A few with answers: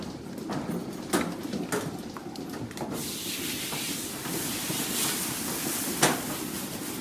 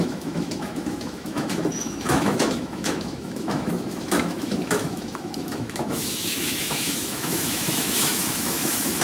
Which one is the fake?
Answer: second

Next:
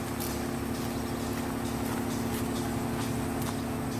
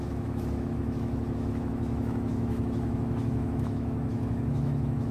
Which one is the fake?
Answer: second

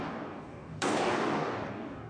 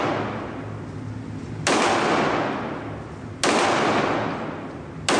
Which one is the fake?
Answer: first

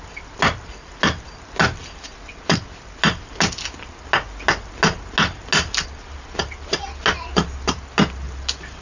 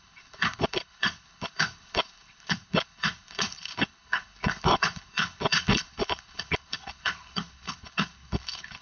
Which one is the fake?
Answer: second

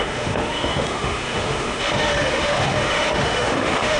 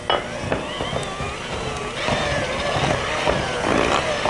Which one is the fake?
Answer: first